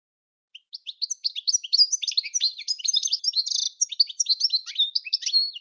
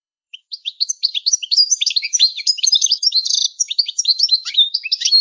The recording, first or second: first